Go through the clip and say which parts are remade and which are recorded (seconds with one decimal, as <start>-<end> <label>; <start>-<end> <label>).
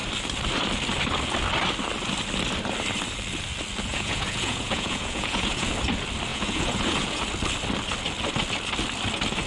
0.0-3.9 recorded; 3.9-5.7 remade; 5.7-6.3 recorded; 6.3-7.2 remade; 7.2-9.5 recorded